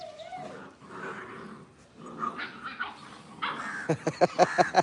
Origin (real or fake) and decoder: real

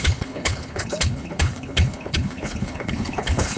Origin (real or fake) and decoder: fake, codec, HILCodec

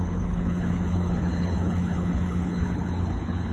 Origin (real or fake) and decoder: fake, codec, HILCodec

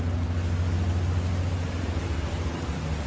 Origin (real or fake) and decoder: real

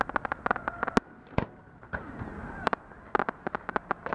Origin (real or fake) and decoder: real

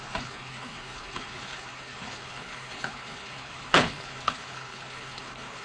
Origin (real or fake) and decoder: fake, codec, HILCodec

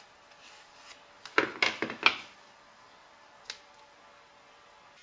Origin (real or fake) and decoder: real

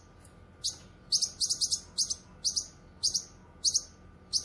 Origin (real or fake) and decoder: real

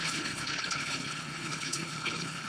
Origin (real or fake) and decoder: fake, codec, HILCodec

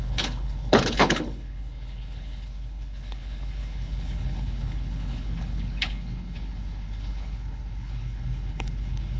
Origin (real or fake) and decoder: fake, codec, HILCodec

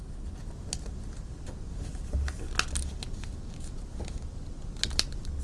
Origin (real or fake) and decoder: real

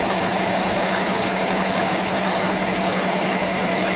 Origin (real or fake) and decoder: fake, codec, HILCodec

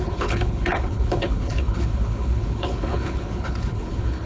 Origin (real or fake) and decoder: fake, codec, HILCodec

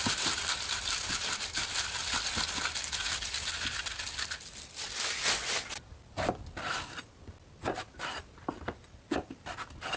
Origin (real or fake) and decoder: real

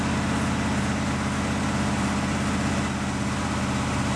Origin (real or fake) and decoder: real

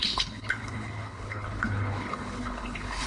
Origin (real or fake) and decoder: fake, codec, HILCodec